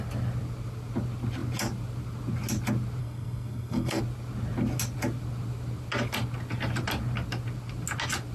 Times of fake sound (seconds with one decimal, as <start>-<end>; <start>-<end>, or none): 3.0-4.0